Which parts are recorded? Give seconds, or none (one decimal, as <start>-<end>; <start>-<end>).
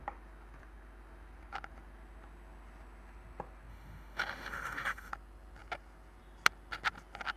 0.0-3.7; 5.1-7.4